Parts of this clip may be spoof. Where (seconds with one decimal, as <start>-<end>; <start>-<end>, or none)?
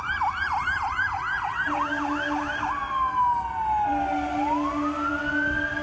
none